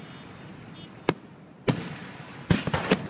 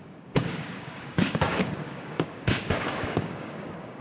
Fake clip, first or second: second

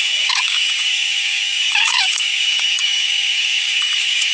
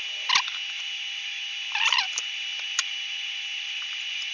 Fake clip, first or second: first